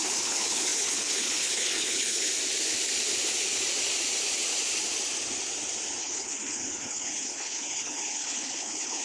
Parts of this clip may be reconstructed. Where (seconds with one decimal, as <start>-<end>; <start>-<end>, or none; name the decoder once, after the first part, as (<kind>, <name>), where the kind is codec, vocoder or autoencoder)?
0.0-2.3 (codec, HILCodec); 6.0-9.0